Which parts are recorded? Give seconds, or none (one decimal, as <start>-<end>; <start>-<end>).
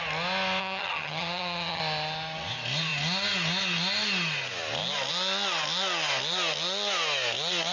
0.0-0.6; 1.8-7.7